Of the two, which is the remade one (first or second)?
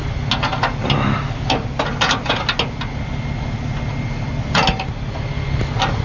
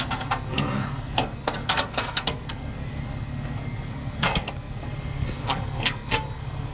second